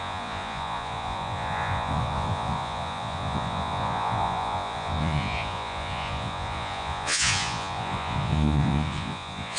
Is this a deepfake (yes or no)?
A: yes